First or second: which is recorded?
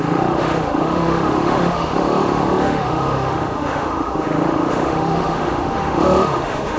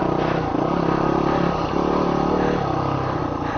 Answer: second